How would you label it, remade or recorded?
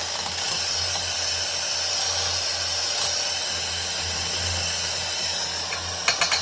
recorded